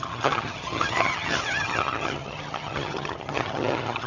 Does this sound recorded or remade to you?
remade